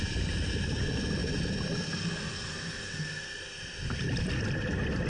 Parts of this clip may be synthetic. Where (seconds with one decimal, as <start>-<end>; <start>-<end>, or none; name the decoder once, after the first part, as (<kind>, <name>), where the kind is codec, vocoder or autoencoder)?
none